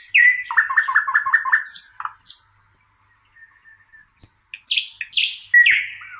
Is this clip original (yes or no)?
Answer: yes